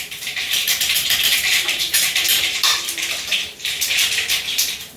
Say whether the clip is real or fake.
fake